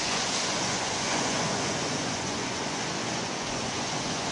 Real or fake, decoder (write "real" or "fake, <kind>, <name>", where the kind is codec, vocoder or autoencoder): fake, vocoder, Vocos